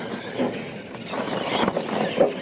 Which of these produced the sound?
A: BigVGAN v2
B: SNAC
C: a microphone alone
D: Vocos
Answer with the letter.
C